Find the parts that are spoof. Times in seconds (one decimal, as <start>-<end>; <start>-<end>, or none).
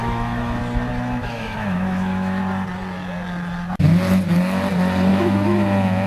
0.0-0.6; 1.2-2.4; 5.1-6.1